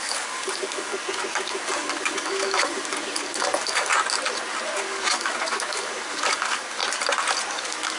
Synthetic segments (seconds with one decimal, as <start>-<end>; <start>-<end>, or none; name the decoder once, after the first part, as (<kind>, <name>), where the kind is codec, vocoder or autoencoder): 0.0-3.9 (codec, DAC); 4.8-6.8; 7.5-8.0